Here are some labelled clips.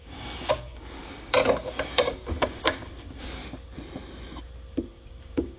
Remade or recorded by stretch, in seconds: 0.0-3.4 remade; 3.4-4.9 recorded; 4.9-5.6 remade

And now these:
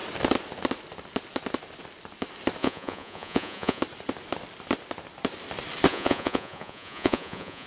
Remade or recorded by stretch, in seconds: 0.0-2.6 recorded; 2.6-3.8 remade; 3.8-5.9 recorded; 5.9-7.7 remade